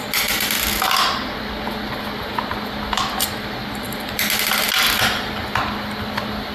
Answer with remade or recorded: recorded